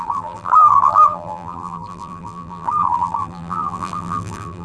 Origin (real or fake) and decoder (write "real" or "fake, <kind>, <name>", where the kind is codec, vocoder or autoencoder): fake, vocoder, BigVGAN v2